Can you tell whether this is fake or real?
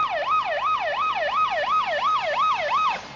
real